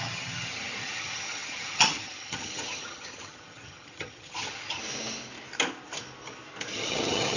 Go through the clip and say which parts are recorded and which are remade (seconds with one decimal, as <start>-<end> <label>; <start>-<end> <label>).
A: 0.0-4.8 remade; 4.8-6.7 recorded; 6.7-7.4 remade